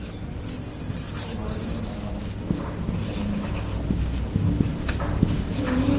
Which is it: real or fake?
real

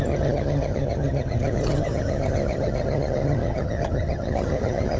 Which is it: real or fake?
fake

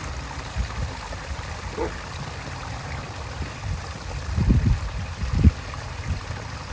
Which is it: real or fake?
real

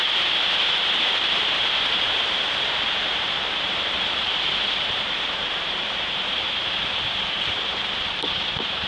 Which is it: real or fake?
fake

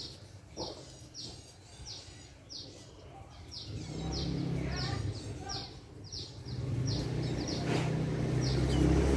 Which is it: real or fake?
real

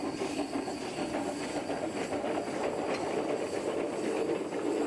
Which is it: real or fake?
real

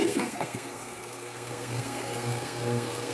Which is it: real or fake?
fake